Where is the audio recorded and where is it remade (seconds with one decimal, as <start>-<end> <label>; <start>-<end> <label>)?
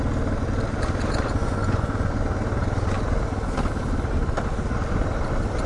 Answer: 0.0-1.4 recorded; 1.4-2.2 remade; 2.2-5.7 recorded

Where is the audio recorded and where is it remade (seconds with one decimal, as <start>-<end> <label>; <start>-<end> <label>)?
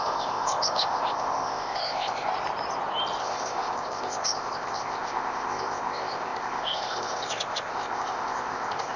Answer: 0.0-2.3 remade; 2.3-3.2 recorded; 3.2-9.0 remade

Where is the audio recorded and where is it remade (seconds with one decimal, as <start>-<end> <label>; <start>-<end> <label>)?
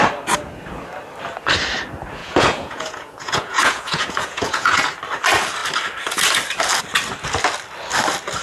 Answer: 0.0-2.2 recorded; 2.2-4.9 remade; 4.9-8.4 recorded